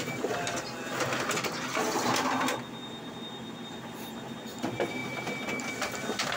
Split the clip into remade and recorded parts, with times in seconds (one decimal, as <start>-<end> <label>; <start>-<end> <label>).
0.0-6.4 recorded